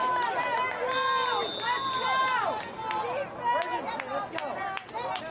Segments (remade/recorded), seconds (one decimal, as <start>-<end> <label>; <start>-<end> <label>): 0.0-5.3 recorded